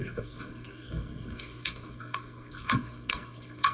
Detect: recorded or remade remade